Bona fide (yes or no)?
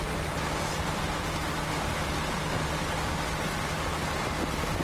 yes